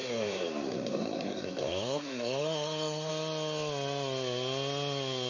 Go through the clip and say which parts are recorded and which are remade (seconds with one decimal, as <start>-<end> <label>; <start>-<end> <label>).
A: 0.0-3.1 remade; 3.1-5.3 recorded